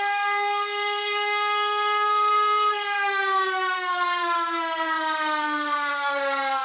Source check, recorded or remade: remade